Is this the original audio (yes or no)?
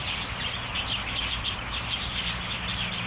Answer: yes